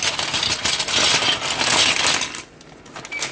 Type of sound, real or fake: real